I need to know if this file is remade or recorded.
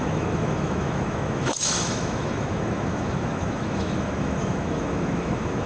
remade